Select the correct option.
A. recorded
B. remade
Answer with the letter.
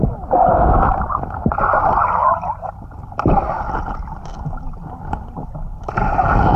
A